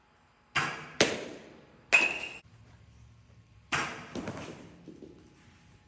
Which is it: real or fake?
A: real